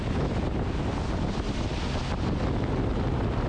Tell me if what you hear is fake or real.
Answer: real